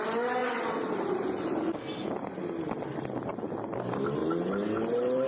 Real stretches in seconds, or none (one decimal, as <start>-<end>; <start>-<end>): 0.0-5.3